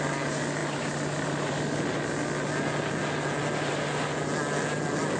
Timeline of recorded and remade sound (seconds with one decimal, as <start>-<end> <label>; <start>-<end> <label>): 0.0-5.2 recorded

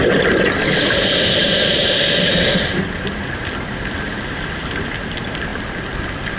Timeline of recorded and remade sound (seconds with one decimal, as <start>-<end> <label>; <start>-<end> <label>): 0.0-6.4 recorded